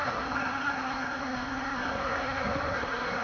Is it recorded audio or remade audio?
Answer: remade